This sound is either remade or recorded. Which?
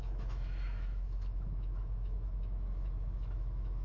remade